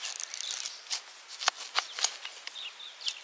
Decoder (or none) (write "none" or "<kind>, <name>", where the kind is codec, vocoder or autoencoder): none